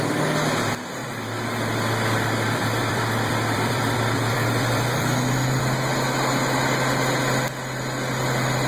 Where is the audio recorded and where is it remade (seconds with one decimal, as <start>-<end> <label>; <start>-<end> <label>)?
0.0-1.0 recorded; 1.0-5.6 remade; 5.6-8.7 recorded

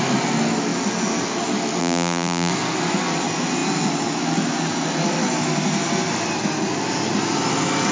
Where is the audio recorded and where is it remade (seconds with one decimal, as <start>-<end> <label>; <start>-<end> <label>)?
0.0-1.8 recorded; 1.8-2.5 remade; 2.5-7.9 recorded